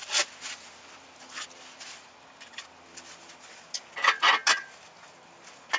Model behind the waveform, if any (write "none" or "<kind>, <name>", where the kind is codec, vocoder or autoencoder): none